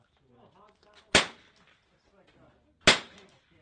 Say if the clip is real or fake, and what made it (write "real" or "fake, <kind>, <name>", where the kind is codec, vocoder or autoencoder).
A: real